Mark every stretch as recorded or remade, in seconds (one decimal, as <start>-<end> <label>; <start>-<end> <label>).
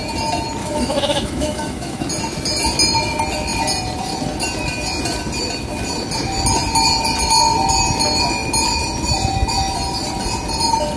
0.0-0.6 recorded; 0.6-2.0 remade; 2.0-11.0 recorded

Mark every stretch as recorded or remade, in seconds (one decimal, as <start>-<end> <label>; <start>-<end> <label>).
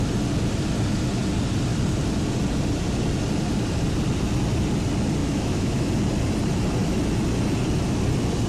0.0-5.2 recorded; 5.2-5.9 remade; 5.9-8.5 recorded